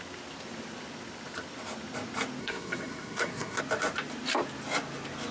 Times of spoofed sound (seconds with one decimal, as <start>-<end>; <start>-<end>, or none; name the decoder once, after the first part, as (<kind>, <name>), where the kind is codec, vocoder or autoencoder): 2.4-3.6 (codec, SNAC)